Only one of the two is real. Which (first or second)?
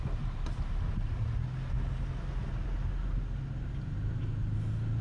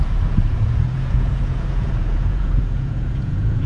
first